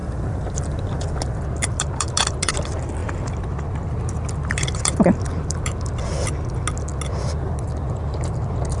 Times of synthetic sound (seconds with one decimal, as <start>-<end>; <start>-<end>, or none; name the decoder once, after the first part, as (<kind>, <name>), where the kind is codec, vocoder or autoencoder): 0.0-2.5 (vocoder, BigVGAN v2); 3.0-6.0